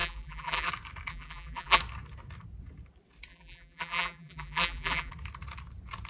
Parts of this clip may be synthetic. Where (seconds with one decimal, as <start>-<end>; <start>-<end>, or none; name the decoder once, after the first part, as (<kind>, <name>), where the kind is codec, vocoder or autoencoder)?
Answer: 0.0-0.7 (vocoder, BigVGAN v2); 1.1-1.8; 3.3-5.1